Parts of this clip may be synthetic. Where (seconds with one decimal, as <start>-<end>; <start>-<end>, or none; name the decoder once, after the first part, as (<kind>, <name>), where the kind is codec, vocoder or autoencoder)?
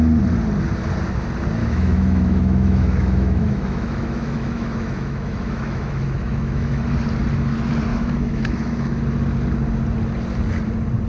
1.6-6.8 (autoencoder, DAC-VAE); 7.9-9.0